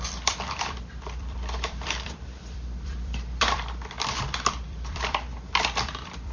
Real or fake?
fake